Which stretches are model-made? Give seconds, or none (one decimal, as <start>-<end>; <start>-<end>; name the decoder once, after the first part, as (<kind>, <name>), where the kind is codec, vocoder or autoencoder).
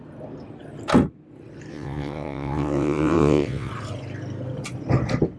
1.7-3.7 (vocoder, WaveNeXt)